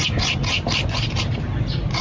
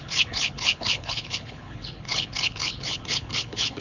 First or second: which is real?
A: first